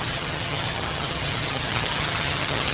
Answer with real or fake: fake